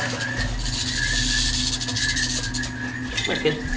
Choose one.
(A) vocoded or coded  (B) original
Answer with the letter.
B